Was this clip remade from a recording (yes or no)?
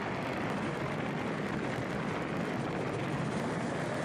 no